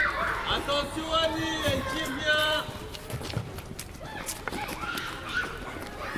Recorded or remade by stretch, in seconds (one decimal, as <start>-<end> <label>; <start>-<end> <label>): 0.0-2.4 recorded; 2.4-5.1 remade; 5.1-6.2 recorded